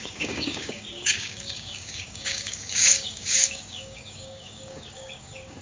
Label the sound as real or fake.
fake